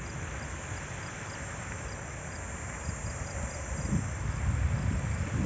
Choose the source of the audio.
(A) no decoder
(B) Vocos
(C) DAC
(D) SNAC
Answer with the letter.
A